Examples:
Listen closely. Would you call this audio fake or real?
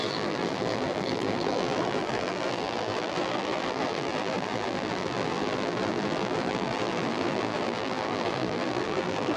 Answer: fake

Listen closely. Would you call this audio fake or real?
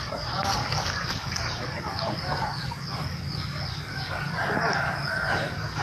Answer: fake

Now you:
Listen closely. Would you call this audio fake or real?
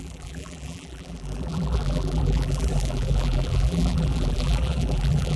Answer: fake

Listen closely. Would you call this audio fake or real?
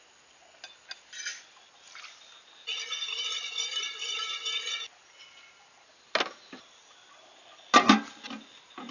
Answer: real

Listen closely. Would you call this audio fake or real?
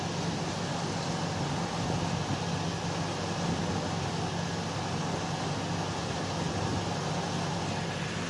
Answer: real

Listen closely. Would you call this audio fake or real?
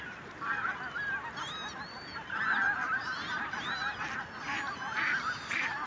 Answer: real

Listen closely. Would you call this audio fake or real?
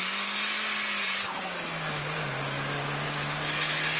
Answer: real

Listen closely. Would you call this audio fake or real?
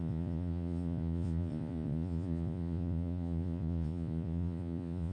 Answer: fake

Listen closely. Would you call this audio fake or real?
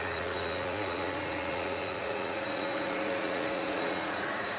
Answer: fake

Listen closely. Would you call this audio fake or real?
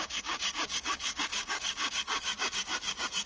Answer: fake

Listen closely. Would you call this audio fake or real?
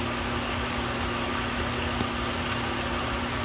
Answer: real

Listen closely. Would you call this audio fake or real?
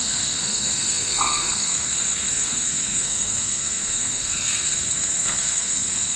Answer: fake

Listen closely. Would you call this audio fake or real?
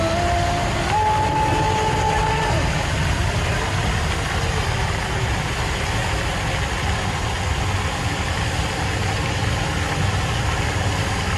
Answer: real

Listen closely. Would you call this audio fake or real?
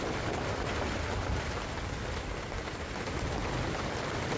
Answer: real